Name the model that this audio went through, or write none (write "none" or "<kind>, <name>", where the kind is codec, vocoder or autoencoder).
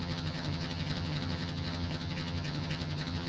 vocoder, HiFi-GAN